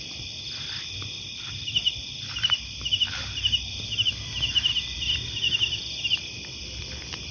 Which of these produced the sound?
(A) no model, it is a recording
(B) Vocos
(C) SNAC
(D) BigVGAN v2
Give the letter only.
D